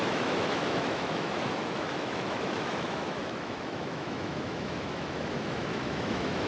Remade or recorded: remade